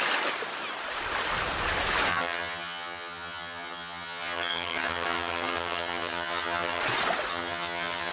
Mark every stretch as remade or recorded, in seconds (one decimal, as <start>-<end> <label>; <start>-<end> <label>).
0.0-2.1 recorded; 2.1-6.8 remade; 6.8-7.3 recorded; 7.3-8.1 remade